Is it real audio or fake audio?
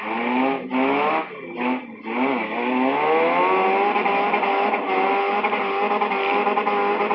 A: real